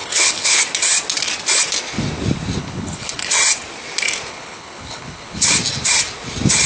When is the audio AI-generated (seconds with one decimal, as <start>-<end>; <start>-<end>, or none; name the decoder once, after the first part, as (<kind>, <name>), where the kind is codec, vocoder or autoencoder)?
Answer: 0.0-0.6 (codec, HILCodec); 2.6-3.3; 4.3-5.5